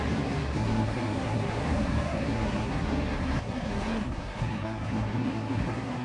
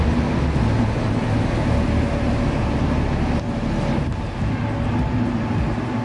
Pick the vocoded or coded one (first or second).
first